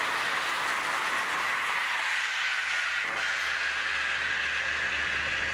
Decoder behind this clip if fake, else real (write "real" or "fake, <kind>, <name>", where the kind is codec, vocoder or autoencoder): real